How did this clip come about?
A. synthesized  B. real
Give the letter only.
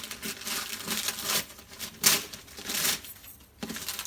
B